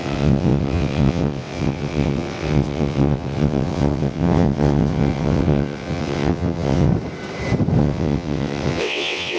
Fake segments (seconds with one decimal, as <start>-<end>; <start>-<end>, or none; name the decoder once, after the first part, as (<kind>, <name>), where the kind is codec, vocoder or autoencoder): 0.0-6.9 (vocoder, WaveNeXt); 7.8-9.4